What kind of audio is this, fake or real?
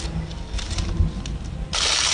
real